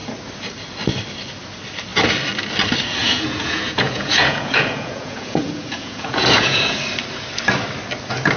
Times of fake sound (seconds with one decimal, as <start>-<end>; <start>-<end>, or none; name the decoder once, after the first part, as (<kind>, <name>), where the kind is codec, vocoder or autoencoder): 3.0-6.8 (vocoder, Vocos)